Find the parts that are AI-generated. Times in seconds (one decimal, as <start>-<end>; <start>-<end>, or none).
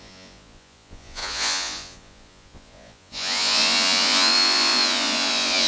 0.0-5.7